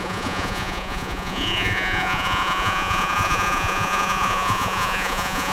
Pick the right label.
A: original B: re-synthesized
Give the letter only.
B